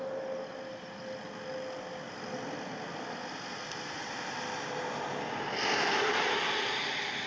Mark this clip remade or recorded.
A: recorded